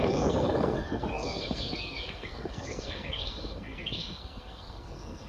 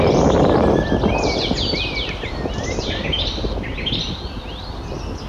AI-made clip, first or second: first